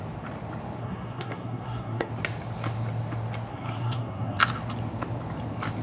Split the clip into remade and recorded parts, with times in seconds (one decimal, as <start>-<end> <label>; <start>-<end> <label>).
0.0-0.8 recorded; 0.8-2.1 remade; 2.1-3.5 recorded; 3.5-4.4 remade; 4.4-5.8 recorded